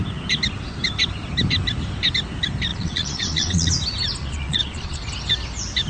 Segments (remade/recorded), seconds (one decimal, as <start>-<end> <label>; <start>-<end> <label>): 0.0-2.7 recorded; 2.7-3.7 remade; 3.7-4.2 recorded; 4.2-5.0 remade; 5.0-5.9 recorded